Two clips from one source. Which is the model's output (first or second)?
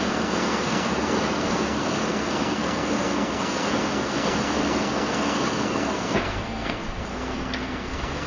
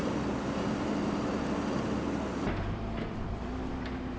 first